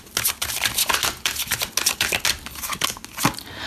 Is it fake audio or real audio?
real